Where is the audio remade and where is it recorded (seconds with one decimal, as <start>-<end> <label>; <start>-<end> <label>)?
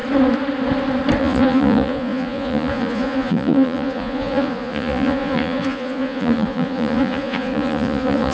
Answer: 0.0-1.2 recorded; 1.2-8.3 remade